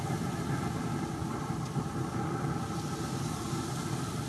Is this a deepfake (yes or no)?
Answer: no